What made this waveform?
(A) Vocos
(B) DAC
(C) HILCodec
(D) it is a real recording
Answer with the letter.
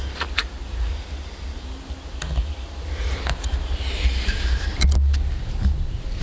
D